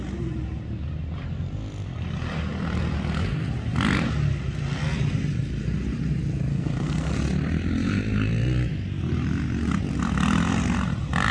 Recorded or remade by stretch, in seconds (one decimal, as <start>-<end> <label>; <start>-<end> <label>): 0.0-6.5 recorded; 6.5-7.1 remade; 7.1-11.3 recorded